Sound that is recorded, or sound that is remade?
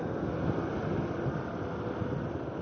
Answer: recorded